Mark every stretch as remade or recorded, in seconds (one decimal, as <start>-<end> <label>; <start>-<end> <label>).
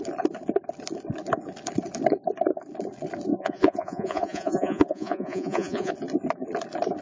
0.0-3.3 recorded; 3.3-5.9 remade; 5.9-7.0 recorded